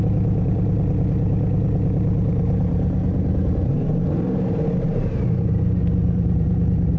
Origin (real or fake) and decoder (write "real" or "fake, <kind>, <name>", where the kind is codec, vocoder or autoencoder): fake, vocoder, BigVGAN v2